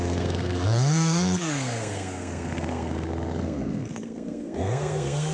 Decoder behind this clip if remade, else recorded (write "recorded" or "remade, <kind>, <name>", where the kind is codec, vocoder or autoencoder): remade, codec, SNAC